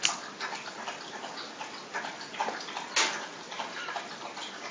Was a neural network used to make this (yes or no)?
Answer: no